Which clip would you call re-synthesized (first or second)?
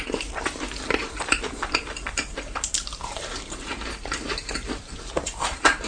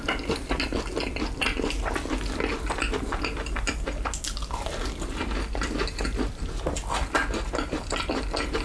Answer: first